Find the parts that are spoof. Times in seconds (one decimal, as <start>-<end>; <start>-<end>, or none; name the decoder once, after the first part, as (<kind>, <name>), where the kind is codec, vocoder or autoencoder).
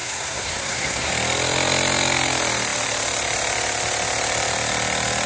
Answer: 0.0-1.1 (codec, SNAC)